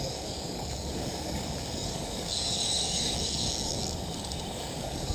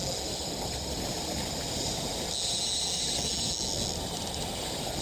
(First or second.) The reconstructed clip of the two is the first